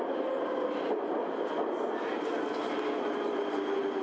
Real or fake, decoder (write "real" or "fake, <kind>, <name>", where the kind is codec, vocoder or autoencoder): real